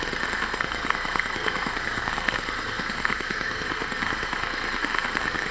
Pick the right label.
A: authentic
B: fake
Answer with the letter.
B